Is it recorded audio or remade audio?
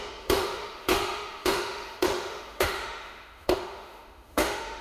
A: remade